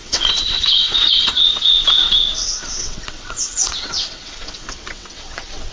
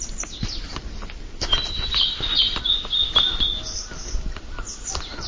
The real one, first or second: second